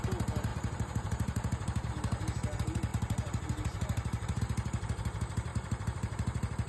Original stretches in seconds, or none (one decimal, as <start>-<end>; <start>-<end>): 0.0-0.5; 1.9-2.9; 4.4-5.5